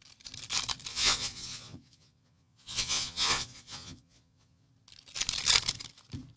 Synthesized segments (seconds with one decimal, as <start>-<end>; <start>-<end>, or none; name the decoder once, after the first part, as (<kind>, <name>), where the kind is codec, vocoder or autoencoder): 0.9-4.7 (vocoder, Vocos)